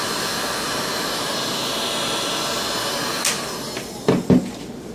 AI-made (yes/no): no